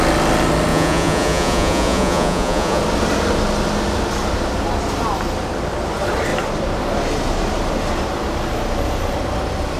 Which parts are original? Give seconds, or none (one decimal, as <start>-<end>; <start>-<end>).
0.0-0.7; 2.8-9.8